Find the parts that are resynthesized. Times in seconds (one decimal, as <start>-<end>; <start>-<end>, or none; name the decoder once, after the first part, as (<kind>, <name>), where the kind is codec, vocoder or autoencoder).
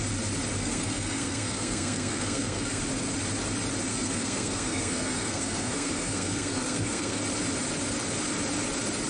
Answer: 0.6-2.8 (codec, SNAC); 3.9-7.2